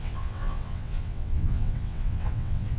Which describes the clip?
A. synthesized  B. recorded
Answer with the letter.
A